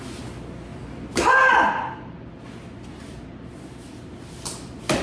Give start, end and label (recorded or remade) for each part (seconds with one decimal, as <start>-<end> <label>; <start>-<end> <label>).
0.0-0.7 recorded; 0.7-3.7 remade; 3.7-5.0 recorded